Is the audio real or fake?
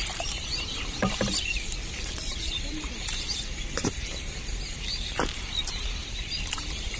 fake